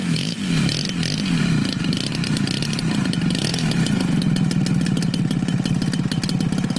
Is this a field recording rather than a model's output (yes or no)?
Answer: yes